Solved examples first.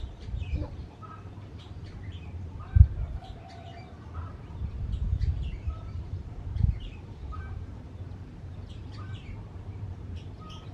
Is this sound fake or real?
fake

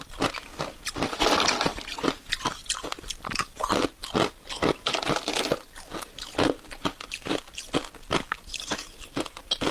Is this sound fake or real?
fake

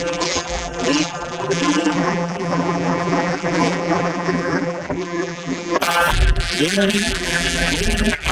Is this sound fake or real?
fake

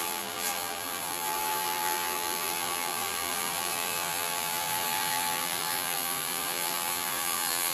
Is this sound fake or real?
fake